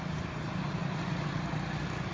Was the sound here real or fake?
real